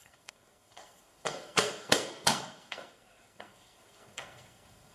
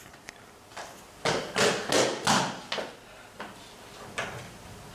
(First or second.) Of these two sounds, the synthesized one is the first